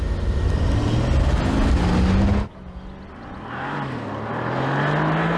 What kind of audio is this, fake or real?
real